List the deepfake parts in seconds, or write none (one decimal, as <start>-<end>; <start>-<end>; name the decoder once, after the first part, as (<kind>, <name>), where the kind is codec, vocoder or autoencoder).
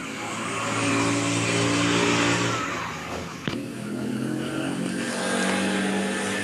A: 0.0-0.9 (codec, DAC); 3.0-5.1